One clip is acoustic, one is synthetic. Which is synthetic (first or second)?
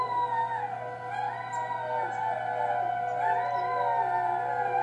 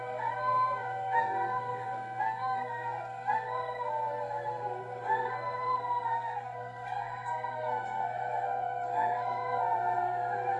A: second